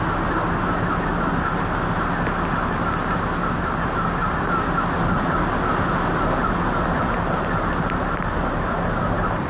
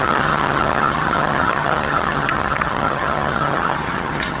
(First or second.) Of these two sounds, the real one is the first